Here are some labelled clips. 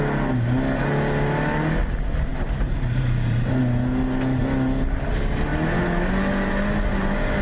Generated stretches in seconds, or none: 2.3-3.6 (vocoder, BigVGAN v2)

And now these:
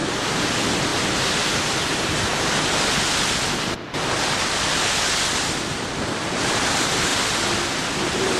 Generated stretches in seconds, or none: 0.0-2.3 (vocoder, BigVGAN v2); 5.4-7.1; 8.0-8.4